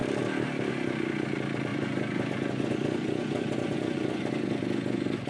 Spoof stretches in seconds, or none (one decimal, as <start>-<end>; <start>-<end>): 1.7-5.3